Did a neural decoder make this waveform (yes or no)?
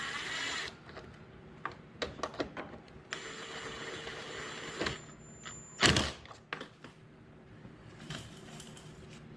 no